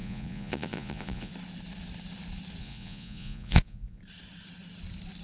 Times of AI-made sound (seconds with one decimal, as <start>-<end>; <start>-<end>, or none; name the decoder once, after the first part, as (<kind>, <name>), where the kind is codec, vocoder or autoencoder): 0.0-1.3 (vocoder, Vocos); 2.6-4.0